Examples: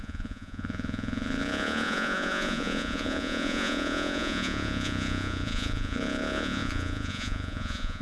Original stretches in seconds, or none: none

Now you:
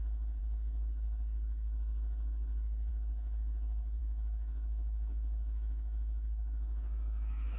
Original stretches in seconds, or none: 0.0-4.0

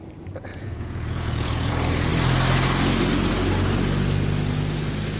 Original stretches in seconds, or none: 0.0-0.5; 1.7-5.2

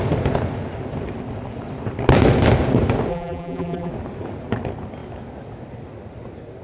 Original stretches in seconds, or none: 0.0-3.1; 3.9-6.6